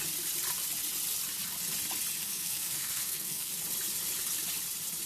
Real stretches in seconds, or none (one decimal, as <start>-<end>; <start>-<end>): 0.0-2.2; 3.5-5.1